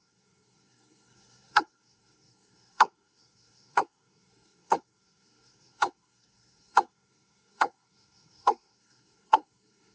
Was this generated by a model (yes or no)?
yes